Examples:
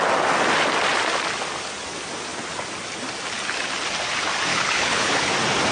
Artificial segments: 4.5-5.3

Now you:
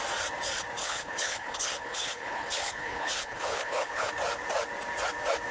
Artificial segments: 0.8-4.1

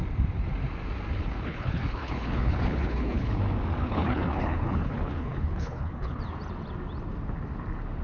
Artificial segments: 1.2-3.4; 3.8-6.2

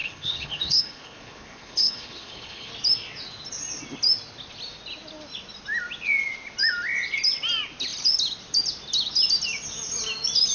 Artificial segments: 0.0-2.7

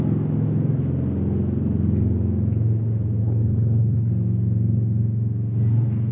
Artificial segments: 3.2-4.1

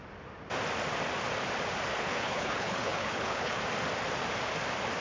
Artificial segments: 1.9-3.6

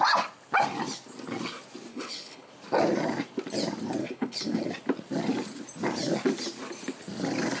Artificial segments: 1.9-2.5; 4.0-4.7

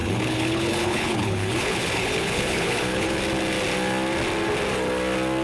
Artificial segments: 0.0-3.2